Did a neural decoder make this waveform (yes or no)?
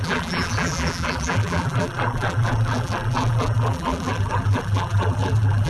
yes